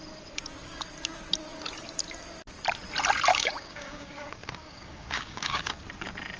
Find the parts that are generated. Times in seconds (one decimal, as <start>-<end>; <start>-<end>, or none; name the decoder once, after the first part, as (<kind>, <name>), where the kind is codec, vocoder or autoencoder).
3.3-5.7 (codec, DAC)